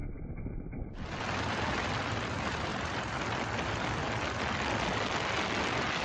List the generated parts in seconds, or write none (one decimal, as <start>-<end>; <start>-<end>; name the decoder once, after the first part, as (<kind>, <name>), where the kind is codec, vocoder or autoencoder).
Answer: none